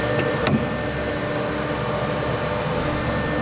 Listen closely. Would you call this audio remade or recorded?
recorded